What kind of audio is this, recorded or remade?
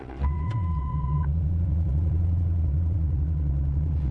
remade